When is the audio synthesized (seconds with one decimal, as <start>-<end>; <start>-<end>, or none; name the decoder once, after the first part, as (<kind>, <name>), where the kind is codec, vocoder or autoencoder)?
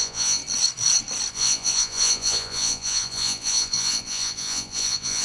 0.0-0.4 (vocoder, Vocos); 1.3-5.2